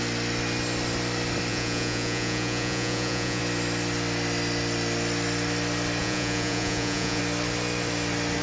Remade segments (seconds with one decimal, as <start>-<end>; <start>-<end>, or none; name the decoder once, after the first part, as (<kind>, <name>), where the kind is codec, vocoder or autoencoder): 1.5-3.4 (vocoder, Vocos); 6.0-7.2